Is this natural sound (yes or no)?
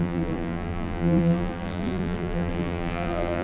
no